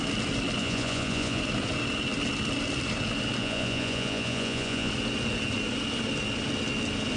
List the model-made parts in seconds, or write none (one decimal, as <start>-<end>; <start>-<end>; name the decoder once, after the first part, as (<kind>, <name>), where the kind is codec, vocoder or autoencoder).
0.6-1.4 (vocoder, Vocos); 3.4-4.9